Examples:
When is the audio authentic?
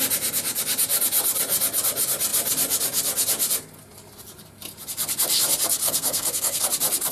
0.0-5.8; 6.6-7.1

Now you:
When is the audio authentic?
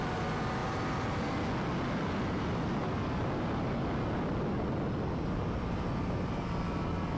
0.0-7.2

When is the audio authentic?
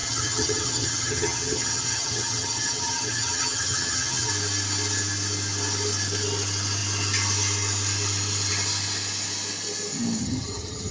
4.3-10.2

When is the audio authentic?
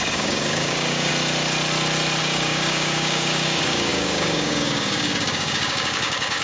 1.1-2.2